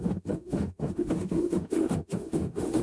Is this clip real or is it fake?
fake